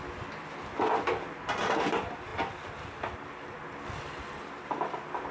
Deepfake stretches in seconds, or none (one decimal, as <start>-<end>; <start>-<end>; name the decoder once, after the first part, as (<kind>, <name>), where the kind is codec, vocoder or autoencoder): none